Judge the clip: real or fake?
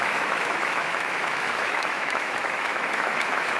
fake